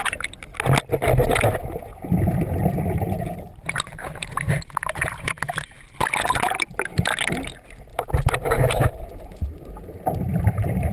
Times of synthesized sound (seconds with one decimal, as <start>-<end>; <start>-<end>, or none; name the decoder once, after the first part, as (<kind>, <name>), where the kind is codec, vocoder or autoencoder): 1.9-5.8 (vocoder, BigVGAN v2); 7.9-10.9